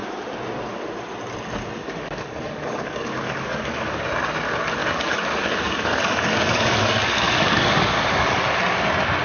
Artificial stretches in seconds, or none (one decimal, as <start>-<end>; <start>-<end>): 1.8-4.0; 4.8-8.4